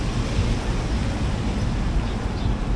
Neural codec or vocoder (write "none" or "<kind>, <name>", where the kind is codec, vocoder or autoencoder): none